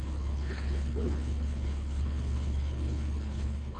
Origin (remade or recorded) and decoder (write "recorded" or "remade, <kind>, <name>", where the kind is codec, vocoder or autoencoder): remade, codec, HILCodec